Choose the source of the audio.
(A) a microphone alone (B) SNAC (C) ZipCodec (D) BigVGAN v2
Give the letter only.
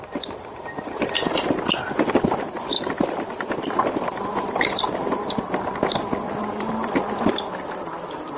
A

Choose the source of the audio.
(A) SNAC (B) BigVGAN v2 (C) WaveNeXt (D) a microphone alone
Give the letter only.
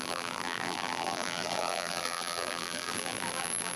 B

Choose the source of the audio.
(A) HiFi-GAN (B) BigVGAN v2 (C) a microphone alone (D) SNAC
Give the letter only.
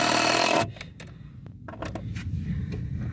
C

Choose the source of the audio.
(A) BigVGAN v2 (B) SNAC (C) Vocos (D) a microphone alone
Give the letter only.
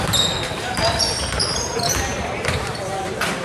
A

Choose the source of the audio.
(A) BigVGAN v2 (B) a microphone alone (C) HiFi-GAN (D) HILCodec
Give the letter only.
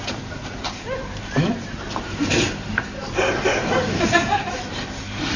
A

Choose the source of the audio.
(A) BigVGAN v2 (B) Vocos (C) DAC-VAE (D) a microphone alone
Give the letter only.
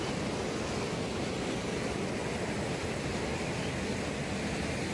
D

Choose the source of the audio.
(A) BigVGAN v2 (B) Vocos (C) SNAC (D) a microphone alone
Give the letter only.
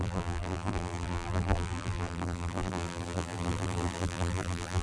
A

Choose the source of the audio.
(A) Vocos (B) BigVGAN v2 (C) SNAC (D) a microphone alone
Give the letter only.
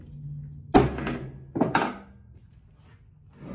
D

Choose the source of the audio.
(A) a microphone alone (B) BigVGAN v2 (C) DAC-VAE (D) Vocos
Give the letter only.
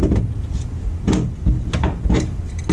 A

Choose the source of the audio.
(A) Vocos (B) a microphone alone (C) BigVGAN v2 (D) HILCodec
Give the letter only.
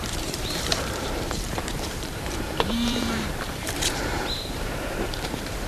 C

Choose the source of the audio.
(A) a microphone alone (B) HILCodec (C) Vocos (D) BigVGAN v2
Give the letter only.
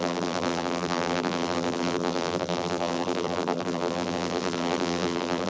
D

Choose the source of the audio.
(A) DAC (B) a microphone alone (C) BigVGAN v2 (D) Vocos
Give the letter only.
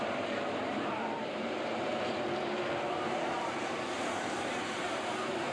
C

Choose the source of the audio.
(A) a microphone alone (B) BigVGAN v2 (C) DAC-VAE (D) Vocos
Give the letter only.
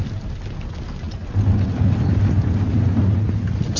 A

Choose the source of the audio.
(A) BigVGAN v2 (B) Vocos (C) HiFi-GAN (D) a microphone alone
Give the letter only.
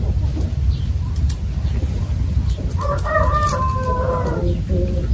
D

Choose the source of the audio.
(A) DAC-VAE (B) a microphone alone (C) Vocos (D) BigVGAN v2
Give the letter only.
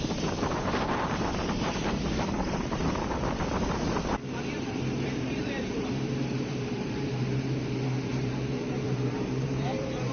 D